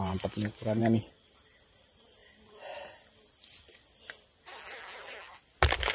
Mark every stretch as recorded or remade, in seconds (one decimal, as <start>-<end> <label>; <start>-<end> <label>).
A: 0.0-0.8 remade; 0.8-1.3 recorded; 1.3-2.2 remade; 2.2-5.9 recorded